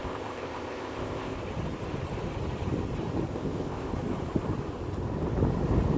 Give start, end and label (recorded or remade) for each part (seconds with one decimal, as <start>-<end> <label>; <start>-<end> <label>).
0.0-1.4 remade; 1.4-3.3 recorded; 3.3-3.9 remade; 3.9-6.0 recorded

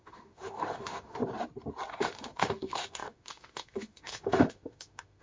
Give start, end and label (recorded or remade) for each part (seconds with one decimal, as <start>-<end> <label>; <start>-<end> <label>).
0.0-1.2 remade; 1.2-1.9 recorded; 1.9-5.2 remade

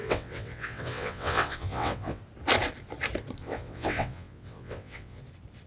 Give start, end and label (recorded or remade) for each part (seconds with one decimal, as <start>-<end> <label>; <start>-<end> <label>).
0.0-2.2 remade; 2.2-3.4 recorded; 3.4-5.2 remade; 5.2-5.7 recorded

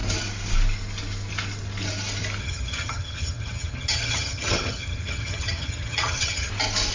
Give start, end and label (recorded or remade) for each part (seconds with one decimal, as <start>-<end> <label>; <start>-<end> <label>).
0.0-2.4 recorded; 2.4-6.5 remade; 6.5-6.9 recorded

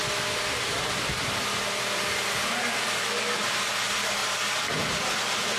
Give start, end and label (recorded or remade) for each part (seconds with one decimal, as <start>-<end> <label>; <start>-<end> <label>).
0.0-5.6 recorded